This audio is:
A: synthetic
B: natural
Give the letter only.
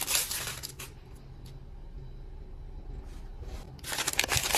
B